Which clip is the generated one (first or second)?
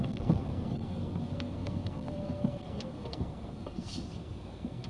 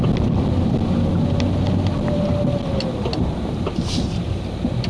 first